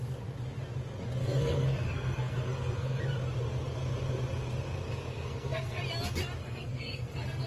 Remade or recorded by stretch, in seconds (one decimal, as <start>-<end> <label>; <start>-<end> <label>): 0.0-1.2 recorded; 1.2-3.0 remade; 3.0-5.1 recorded; 5.1-5.8 remade; 5.8-6.4 recorded; 6.4-7.5 remade